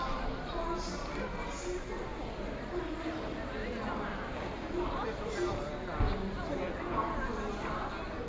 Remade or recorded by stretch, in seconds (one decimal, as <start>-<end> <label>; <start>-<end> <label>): 0.0-8.3 recorded